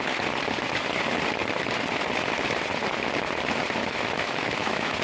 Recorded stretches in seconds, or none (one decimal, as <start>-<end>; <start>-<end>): 0.0-3.8